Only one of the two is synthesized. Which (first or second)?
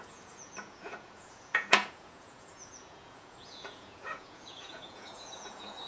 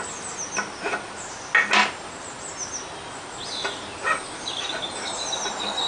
first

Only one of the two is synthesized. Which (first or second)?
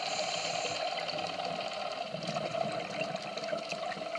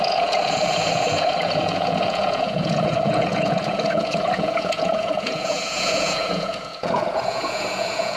second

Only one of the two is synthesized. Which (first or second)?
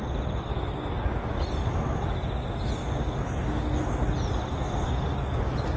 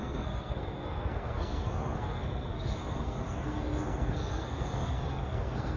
second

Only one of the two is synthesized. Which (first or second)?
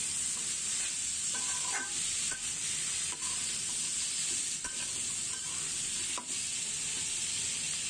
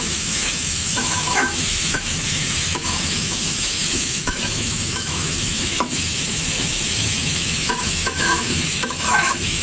second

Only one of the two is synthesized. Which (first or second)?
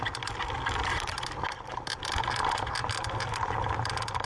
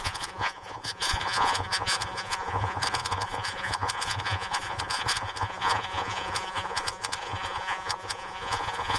second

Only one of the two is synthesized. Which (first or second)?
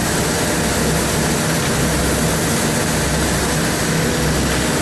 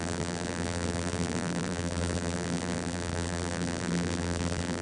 second